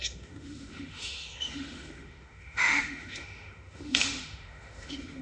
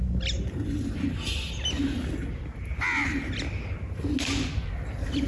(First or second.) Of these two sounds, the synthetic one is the first